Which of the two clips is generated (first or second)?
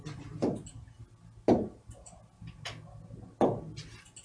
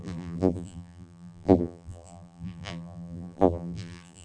second